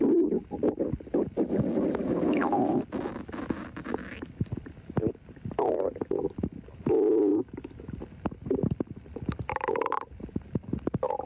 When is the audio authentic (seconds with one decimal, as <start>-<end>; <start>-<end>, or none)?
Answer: 0.0-11.3